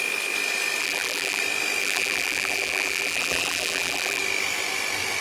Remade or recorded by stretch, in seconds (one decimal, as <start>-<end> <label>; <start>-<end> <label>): 0.0-0.8 recorded; 0.8-1.4 remade; 1.4-1.8 recorded; 1.8-4.2 remade; 4.2-5.2 recorded